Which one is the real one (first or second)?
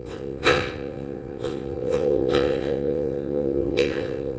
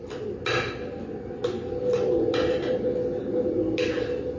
second